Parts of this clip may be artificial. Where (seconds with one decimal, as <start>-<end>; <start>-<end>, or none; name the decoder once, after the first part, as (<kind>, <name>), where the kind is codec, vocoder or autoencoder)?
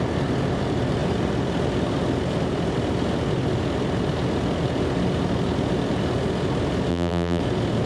6.9-7.4 (vocoder, BigVGAN v2)